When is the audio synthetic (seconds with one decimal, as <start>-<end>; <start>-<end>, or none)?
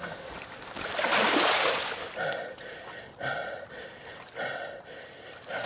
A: none